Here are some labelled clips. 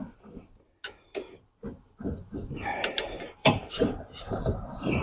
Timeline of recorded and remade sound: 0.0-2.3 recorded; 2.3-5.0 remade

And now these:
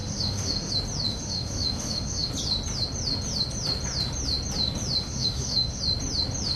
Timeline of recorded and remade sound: 0.0-0.7 remade; 0.7-1.1 recorded; 1.1-2.3 remade; 2.3-5.0 recorded; 5.0-5.8 remade; 5.8-6.6 recorded

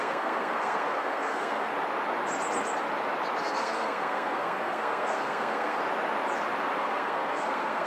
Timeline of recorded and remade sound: 0.0-1.7 remade; 1.7-3.4 recorded; 3.4-5.8 remade; 5.8-6.8 recorded; 6.8-7.9 remade

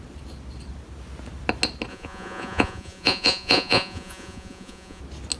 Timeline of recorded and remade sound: 0.0-1.9 recorded; 1.9-5.0 remade; 5.0-5.4 recorded

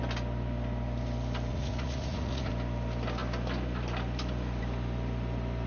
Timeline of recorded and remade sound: 0.0-1.5 recorded; 1.5-2.5 remade; 2.5-5.7 recorded

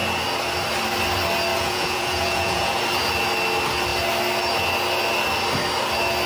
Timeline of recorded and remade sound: 0.0-1.5 recorded; 1.5-2.8 remade; 2.8-6.3 recorded

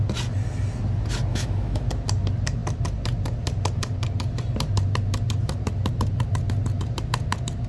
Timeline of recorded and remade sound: 0.0-1.3 recorded; 1.3-1.8 remade; 1.8-7.7 recorded

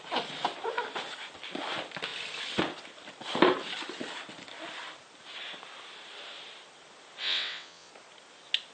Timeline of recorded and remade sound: 0.0-7.2 recorded; 7.2-7.9 remade; 7.9-8.7 recorded